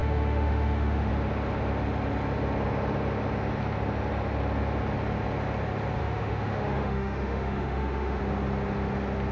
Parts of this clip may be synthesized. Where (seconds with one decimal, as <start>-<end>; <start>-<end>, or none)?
0.0-1.1; 6.0-8.2